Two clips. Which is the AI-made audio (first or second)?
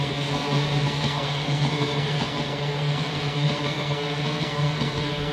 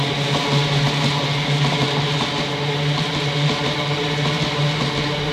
first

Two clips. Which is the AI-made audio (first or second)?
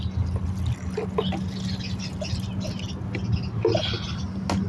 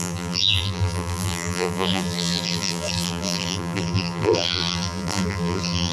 second